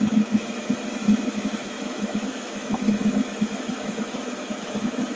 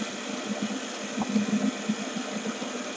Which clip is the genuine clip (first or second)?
second